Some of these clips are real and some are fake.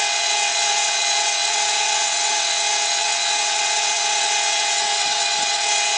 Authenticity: fake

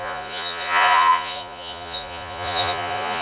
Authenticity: fake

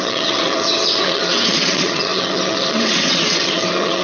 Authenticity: fake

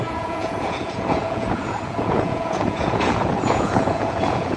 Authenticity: fake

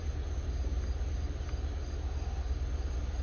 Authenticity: real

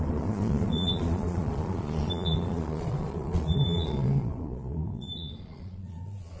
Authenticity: fake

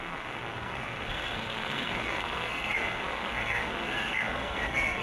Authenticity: fake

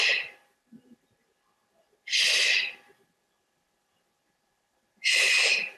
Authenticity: real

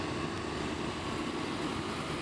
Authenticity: real